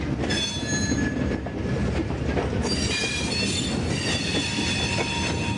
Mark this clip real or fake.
real